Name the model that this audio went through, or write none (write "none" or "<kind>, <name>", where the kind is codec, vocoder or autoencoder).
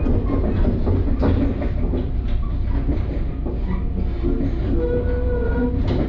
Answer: none